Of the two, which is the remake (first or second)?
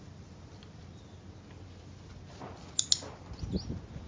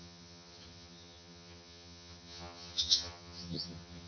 second